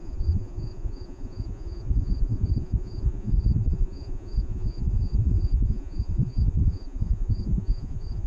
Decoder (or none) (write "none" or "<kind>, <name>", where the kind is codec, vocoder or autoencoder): vocoder, Vocos